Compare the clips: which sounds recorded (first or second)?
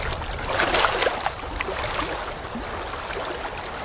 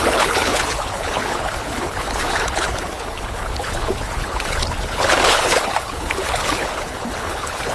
first